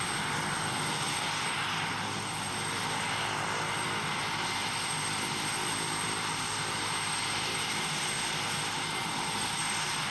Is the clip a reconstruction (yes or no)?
no